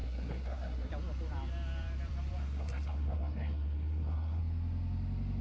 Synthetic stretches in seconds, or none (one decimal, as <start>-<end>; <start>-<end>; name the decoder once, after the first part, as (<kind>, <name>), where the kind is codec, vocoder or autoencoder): 0.0-0.9 (codec, SNAC); 2.4-4.4